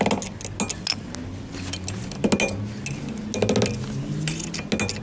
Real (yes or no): yes